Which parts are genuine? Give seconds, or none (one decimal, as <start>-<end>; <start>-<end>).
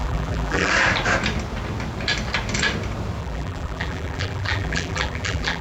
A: 0.7-3.2